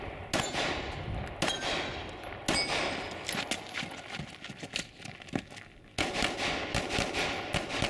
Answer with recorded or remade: recorded